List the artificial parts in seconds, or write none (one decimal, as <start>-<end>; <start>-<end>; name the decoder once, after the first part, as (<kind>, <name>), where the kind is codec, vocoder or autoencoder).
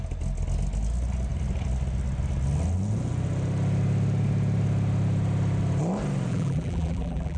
6.3-7.4 (vocoder, BigVGAN v2)